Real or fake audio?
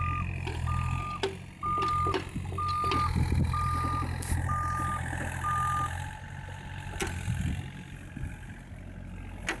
real